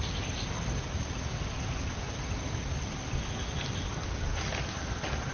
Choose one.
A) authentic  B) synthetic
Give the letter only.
A